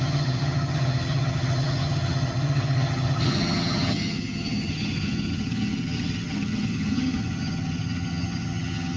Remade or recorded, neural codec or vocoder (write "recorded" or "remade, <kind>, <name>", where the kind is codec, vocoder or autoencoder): remade, vocoder, HiFi-GAN